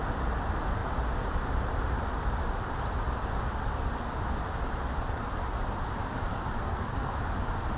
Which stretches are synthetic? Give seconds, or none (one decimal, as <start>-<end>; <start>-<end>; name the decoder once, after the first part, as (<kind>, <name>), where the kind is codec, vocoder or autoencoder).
6.3-7.1 (codec, SNAC)

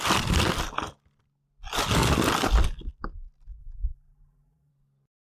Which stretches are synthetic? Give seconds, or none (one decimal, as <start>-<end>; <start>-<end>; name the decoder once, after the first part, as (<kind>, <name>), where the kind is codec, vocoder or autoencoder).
3.6-4.7 (vocoder, BigVGAN v2)

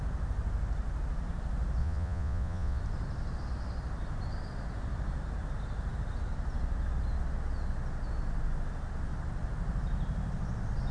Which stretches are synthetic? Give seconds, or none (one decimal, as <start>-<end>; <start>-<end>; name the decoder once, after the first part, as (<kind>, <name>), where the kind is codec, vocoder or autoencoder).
1.8-2.8 (vocoder, Vocos)

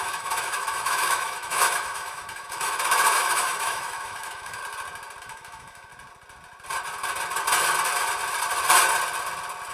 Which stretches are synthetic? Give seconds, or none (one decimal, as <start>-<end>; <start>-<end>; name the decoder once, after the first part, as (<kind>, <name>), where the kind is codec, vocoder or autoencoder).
0.0-4.6 (autoencoder, DAC-VAE); 5.2-5.9

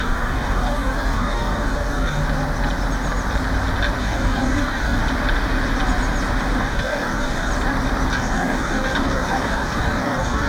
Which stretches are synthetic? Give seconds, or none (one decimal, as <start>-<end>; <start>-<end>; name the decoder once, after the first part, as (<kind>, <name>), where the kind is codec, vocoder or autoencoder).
0.0-2.2 (codec, DAC); 4.0-5.0; 6.6-7.5; 8.1-10.5